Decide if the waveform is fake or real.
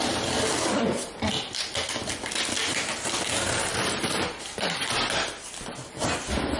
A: real